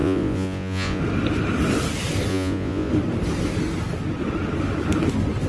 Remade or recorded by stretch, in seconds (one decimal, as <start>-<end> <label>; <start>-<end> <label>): 0.0-1.0 remade; 1.0-2.3 recorded; 2.3-2.9 remade; 2.9-5.5 recorded